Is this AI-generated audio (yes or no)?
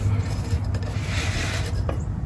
no